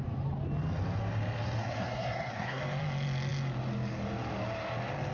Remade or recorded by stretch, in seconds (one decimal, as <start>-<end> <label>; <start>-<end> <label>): 0.0-1.6 recorded; 1.6-2.6 remade; 2.6-5.1 recorded